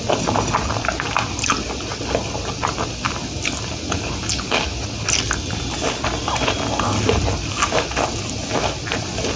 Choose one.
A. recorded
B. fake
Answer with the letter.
A